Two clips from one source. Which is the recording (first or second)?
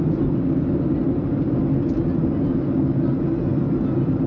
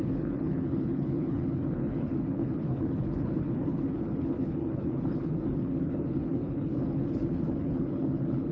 first